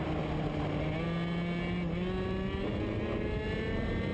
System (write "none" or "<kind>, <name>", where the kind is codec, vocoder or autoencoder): none